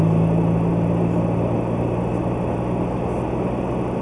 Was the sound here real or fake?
real